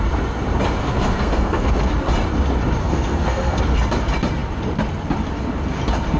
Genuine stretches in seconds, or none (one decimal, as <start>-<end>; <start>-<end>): 0.0-0.8; 1.9-2.8; 3.6-6.2